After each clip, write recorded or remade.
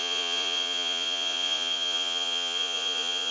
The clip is remade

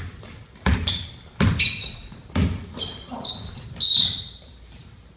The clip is recorded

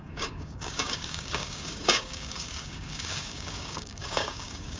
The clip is remade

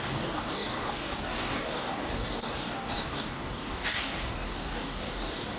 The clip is remade